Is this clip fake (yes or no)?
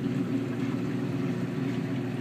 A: yes